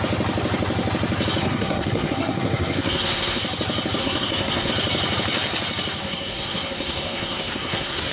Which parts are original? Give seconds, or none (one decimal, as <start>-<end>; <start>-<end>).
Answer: 0.0-1.4; 3.4-4.0; 4.7-6.0